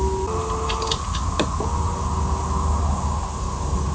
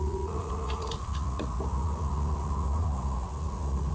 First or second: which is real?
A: first